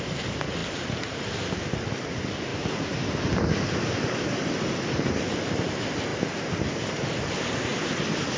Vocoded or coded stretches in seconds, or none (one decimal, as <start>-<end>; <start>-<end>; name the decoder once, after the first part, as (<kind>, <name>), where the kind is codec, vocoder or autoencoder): none